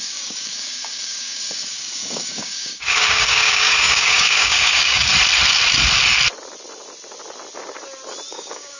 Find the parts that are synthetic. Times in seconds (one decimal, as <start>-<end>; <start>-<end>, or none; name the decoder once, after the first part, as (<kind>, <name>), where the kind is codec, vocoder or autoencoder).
0.0-5.1 (codec, DAC); 8.3-8.8